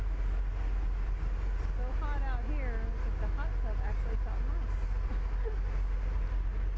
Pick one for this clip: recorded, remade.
recorded